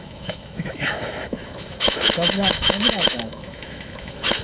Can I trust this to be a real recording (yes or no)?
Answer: no